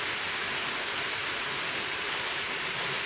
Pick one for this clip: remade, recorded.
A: recorded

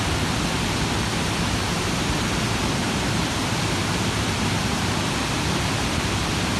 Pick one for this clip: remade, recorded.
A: recorded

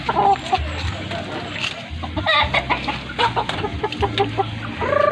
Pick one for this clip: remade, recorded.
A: recorded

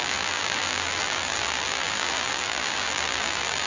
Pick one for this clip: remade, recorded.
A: remade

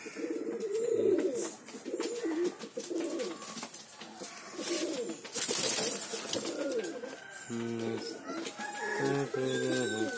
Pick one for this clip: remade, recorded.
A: recorded